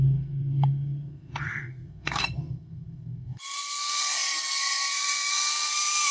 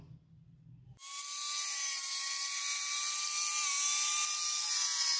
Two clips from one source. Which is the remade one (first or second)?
first